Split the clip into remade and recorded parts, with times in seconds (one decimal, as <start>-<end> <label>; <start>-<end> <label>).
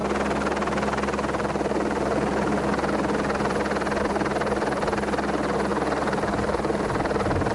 0.0-7.5 recorded